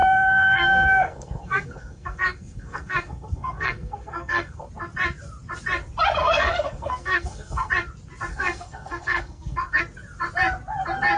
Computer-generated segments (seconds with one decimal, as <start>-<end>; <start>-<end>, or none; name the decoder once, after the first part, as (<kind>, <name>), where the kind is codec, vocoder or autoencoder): 0.0-4.7 (codec, SNAC); 6.2-7.7; 8.3-9.8